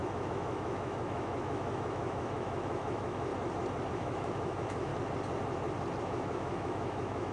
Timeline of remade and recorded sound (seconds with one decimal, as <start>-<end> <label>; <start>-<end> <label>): 0.0-3.3 remade; 3.3-3.9 recorded; 3.9-4.9 remade; 4.9-6.0 recorded; 6.0-7.3 remade